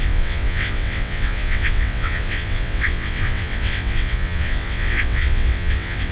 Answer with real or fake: fake